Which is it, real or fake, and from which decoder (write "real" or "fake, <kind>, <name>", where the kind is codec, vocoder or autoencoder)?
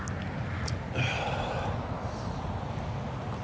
real